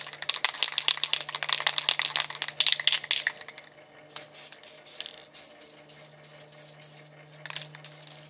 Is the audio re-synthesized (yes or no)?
no